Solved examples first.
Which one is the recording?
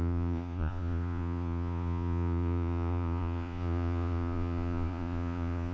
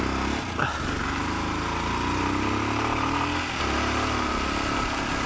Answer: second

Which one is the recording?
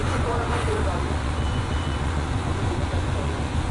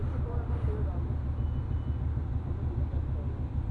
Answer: second